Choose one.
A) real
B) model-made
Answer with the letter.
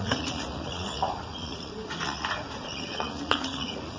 B